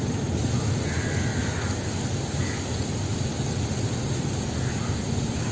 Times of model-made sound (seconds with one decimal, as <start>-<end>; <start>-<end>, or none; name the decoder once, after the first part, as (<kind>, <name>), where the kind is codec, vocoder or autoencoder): none

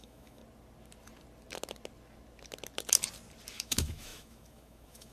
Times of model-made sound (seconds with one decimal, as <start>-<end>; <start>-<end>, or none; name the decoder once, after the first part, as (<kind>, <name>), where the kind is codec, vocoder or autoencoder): 0.0-0.4 (autoencoder, DAC-VAE); 3.5-5.1